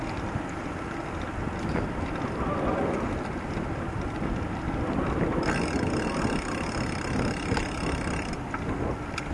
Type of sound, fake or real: real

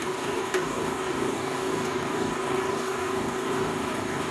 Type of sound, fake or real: fake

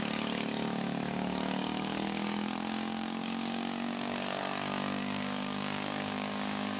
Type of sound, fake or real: fake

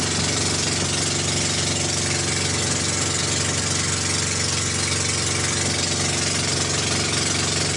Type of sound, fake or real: real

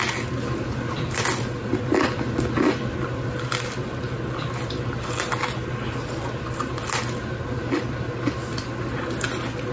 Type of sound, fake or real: real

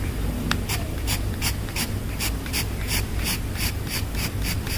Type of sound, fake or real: fake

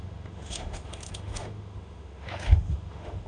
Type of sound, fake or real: fake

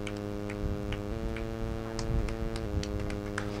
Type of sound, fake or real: real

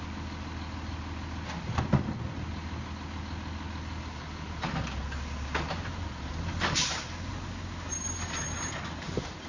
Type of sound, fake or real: real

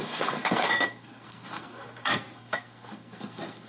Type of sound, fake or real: fake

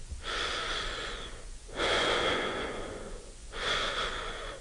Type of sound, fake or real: fake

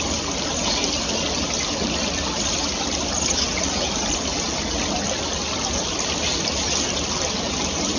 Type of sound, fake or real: real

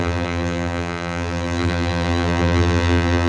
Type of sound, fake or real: fake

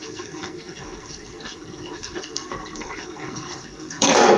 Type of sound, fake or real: fake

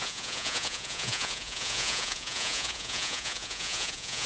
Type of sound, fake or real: fake